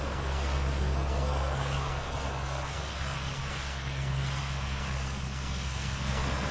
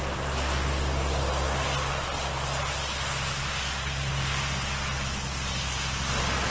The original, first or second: second